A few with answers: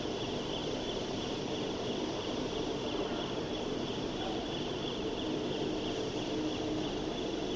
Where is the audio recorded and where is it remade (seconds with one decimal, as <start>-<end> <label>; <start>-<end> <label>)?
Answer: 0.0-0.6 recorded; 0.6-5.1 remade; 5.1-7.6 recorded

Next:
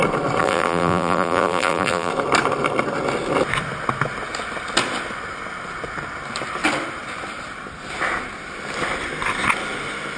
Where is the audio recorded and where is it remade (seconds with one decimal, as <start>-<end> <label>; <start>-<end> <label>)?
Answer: 0.0-0.4 recorded; 0.4-2.1 remade; 2.1-10.2 recorded

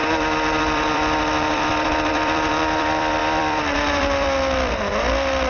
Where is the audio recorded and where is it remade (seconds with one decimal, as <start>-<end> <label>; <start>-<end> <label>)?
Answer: 0.0-0.6 recorded; 0.6-5.5 remade

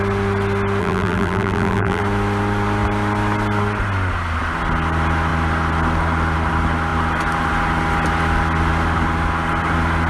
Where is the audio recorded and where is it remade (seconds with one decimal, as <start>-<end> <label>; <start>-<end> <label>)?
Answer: 0.0-0.8 recorded; 0.8-2.0 remade; 2.0-10.1 recorded

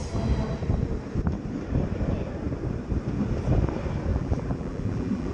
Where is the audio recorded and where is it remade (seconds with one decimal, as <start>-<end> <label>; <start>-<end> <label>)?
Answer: 0.0-4.1 recorded; 4.1-5.3 remade

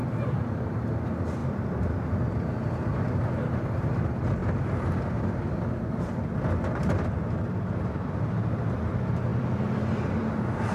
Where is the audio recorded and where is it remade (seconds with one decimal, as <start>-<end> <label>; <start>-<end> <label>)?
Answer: 0.0-0.8 remade; 0.8-1.4 recorded; 1.4-3.5 remade; 3.5-9.3 recorded; 9.3-10.2 remade; 10.2-10.7 recorded